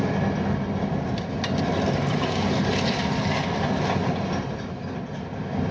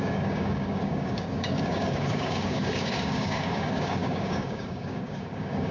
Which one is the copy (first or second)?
second